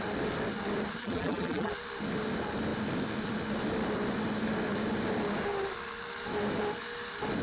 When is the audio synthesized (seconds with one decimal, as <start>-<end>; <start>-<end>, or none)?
1.0-1.7